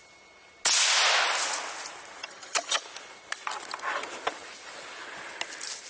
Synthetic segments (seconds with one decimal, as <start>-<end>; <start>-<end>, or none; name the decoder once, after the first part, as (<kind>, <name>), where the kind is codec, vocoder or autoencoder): 2.2-2.8 (vocoder, HiFi-GAN)